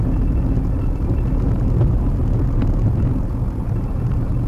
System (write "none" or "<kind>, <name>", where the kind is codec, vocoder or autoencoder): none